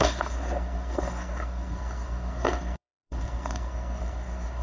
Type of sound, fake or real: fake